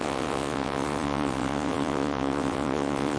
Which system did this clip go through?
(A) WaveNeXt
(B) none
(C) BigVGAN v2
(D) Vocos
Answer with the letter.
A